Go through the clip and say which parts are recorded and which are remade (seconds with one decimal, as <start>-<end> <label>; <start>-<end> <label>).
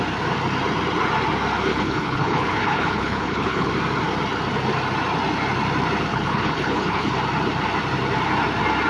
0.0-1.7 recorded; 1.7-3.7 remade; 3.7-6.1 recorded; 6.1-7.1 remade; 7.1-8.9 recorded